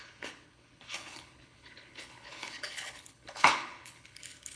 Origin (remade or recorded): remade